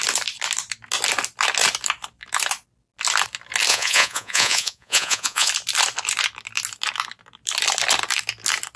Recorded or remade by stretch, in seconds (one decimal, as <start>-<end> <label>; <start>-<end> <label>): 0.0-3.7 recorded; 3.7-5.5 remade; 5.5-8.8 recorded